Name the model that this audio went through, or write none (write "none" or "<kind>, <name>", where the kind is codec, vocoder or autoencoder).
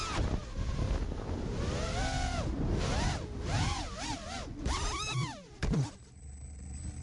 none